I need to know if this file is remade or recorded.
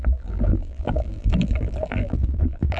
remade